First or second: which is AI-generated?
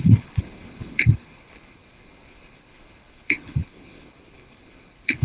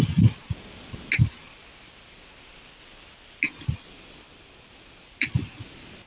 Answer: first